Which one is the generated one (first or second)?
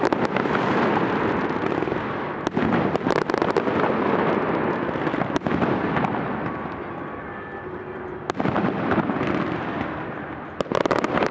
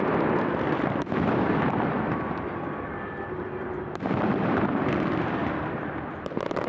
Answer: second